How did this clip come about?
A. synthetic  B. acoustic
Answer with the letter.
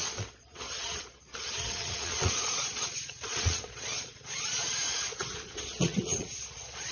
A